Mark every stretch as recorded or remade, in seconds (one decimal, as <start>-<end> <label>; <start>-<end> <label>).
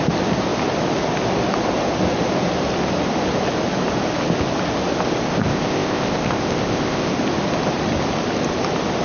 0.0-5.3 recorded; 5.3-7.1 remade; 7.1-9.0 recorded